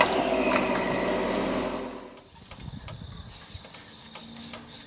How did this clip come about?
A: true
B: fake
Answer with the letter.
A